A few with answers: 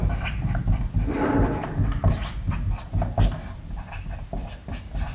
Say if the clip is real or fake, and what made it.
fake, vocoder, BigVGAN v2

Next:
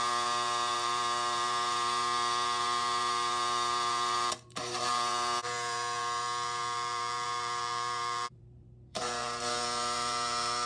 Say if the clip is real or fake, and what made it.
fake, vocoder, BigVGAN v2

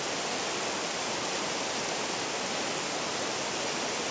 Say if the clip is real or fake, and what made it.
real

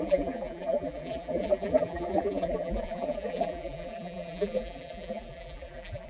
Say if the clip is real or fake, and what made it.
fake, vocoder, BigVGAN v2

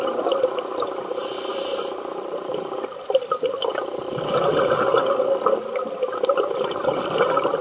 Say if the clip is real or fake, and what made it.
real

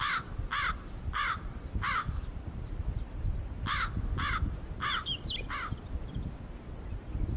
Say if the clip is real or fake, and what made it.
fake, vocoder, BigVGAN v2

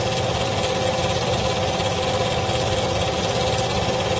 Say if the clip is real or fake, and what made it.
real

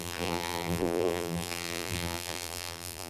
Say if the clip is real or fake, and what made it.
fake, vocoder, BigVGAN v2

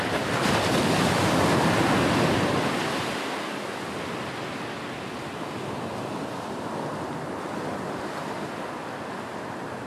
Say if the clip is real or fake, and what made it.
real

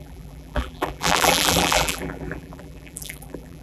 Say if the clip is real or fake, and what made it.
fake, vocoder, BigVGAN v2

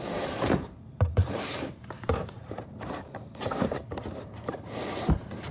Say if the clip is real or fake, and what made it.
fake, vocoder, BigVGAN v2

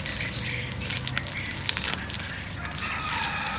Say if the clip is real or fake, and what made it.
real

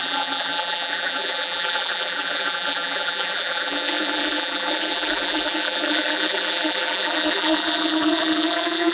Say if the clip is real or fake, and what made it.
fake, vocoder, BigVGAN v2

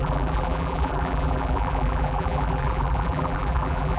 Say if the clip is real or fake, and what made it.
fake, vocoder, BigVGAN v2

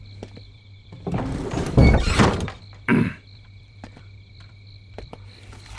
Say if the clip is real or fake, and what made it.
fake, vocoder, BigVGAN v2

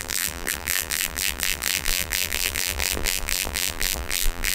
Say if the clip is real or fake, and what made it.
fake, vocoder, BigVGAN v2